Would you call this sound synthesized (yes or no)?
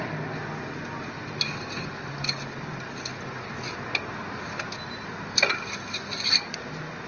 no